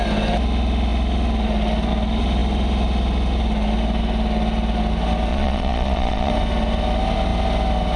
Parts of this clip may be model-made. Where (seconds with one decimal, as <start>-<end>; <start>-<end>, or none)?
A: 5.3-6.3